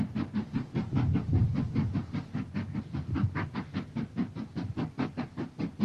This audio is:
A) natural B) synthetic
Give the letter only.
A